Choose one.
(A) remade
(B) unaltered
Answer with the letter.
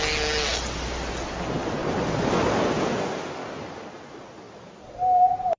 B